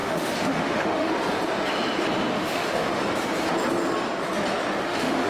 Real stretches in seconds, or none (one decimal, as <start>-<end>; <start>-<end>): 1.1-2.3; 3.0-4.8